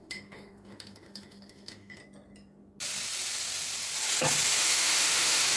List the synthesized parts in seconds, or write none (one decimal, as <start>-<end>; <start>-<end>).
0.0-2.0; 4.6-5.6